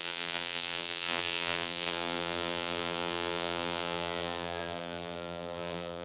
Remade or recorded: remade